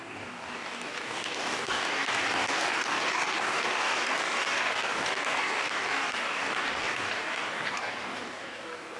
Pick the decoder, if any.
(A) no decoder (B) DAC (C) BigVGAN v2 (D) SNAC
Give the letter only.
B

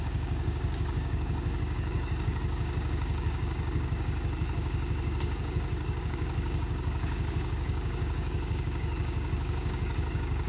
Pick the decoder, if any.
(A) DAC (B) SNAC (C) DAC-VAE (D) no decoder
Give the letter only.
A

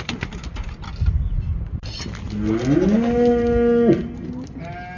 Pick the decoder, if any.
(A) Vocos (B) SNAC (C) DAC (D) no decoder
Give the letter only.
D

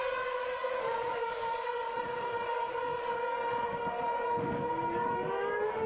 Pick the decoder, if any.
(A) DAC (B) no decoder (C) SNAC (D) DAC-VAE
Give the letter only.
A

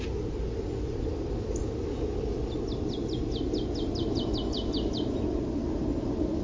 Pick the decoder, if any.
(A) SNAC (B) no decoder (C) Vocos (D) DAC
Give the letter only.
B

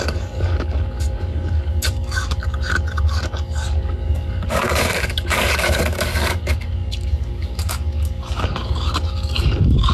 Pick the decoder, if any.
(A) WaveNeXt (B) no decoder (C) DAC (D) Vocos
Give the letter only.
C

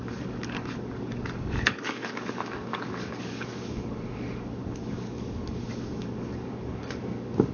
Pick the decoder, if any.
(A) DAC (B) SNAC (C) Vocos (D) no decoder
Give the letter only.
A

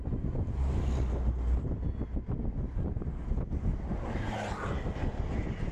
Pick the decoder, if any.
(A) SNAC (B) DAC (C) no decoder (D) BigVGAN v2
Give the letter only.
C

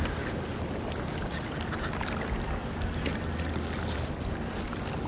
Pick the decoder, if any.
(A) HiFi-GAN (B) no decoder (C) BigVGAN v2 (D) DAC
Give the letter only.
B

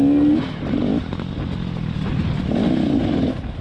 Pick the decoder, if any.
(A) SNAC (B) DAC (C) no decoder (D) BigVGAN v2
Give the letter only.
C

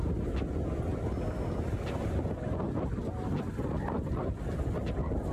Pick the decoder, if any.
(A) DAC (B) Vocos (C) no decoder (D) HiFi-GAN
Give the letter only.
C